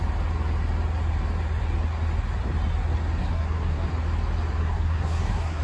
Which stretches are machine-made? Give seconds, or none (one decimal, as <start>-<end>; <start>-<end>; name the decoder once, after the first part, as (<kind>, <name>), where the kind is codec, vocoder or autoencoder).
3.2-3.9 (codec, SNAC); 4.6-5.6